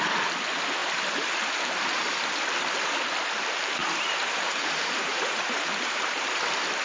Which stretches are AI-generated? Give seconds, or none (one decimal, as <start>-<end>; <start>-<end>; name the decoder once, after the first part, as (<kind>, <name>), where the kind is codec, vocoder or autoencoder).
3.8-6.3 (vocoder, BigVGAN v2)